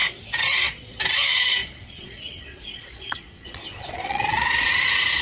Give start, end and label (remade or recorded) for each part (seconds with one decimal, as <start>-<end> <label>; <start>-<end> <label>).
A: 0.0-1.0 remade; 1.0-1.6 recorded; 1.6-4.7 remade; 4.7-5.2 recorded